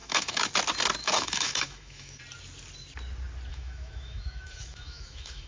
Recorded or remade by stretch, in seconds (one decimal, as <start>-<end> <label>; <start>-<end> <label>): 0.0-0.5 remade; 0.5-1.0 recorded; 1.0-2.2 remade; 2.2-3.5 recorded; 3.5-5.5 remade